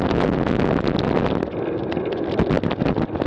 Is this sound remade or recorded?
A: recorded